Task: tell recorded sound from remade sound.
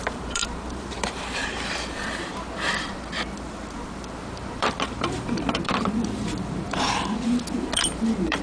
remade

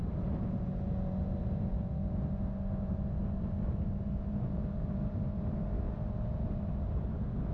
recorded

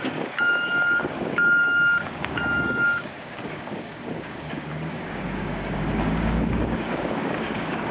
remade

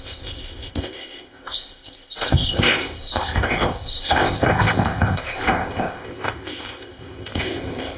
remade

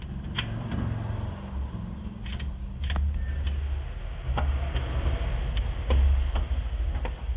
recorded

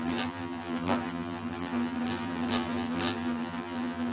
remade